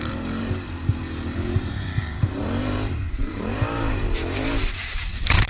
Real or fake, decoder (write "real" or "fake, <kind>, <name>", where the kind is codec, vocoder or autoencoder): fake, vocoder, BigVGAN v2